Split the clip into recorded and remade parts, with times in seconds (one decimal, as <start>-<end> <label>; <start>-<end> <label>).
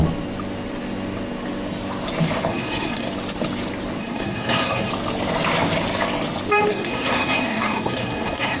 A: 0.0-2.5 recorded; 2.5-3.1 remade; 3.1-4.0 recorded; 4.0-4.9 remade; 4.9-6.7 recorded; 6.7-8.6 remade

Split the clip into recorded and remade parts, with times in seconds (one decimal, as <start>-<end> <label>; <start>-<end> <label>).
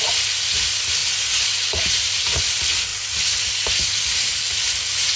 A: 0.0-5.2 recorded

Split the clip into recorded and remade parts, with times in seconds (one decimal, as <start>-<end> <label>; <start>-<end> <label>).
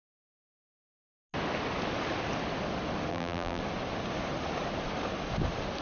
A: 0.0-3.1 recorded; 3.1-3.6 remade; 3.6-5.8 recorded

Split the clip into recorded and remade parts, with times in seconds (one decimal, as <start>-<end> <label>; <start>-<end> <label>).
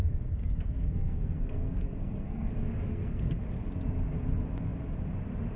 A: 0.0-2.5 remade; 2.5-2.9 recorded; 2.9-3.4 remade; 3.4-5.6 recorded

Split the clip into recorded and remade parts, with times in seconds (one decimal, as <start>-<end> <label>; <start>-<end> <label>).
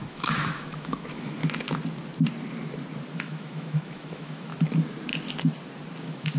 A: 0.0-1.4 remade; 1.4-3.1 recorded; 3.1-4.5 remade; 4.5-6.0 recorded; 6.0-6.4 remade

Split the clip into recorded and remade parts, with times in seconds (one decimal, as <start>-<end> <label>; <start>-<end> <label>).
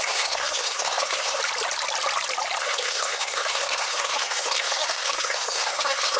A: 0.0-1.4 remade; 1.4-2.6 recorded; 2.6-6.2 remade